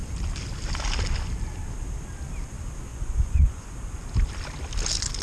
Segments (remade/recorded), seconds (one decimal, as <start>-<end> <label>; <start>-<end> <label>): 0.0-2.9 recorded; 2.9-3.7 remade; 3.7-5.2 recorded